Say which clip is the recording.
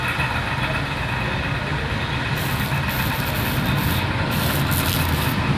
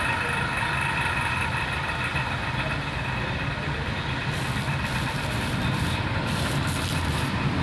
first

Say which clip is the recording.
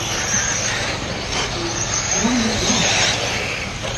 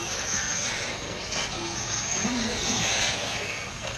first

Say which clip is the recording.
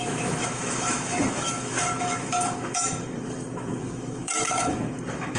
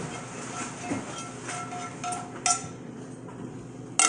second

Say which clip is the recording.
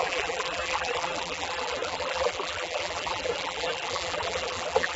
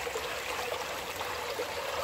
second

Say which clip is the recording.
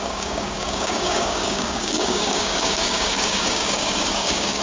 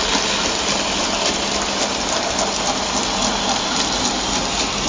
second